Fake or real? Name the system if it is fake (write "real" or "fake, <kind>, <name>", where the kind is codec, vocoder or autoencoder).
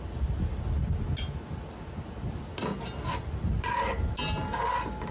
real